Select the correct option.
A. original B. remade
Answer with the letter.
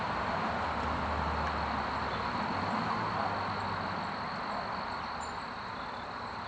A